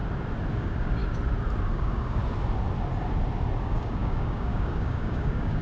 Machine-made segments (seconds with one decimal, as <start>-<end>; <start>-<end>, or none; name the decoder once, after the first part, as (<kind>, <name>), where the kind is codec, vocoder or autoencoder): 0.5-1.0 (codec, DAC); 1.7-2.2; 3.6-5.6